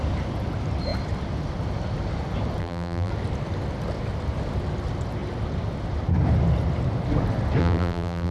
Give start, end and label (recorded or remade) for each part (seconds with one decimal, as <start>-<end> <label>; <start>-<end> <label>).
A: 0.0-2.6 recorded; 2.6-3.1 remade; 3.1-7.6 recorded; 7.6-8.3 remade